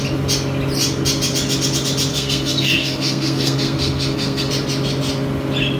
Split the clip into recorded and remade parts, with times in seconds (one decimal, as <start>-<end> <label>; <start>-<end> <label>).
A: 0.0-2.1 recorded; 2.1-4.5 remade; 4.5-5.8 recorded